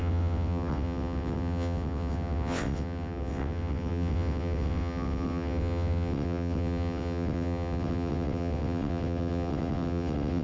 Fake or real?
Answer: fake